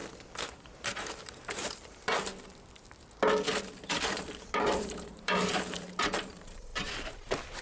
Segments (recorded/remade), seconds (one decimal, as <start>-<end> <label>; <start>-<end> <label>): 0.0-0.5 recorded; 0.5-2.3 remade; 2.3-3.6 recorded; 3.6-6.7 remade; 6.7-7.6 recorded